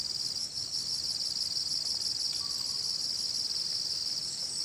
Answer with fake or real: real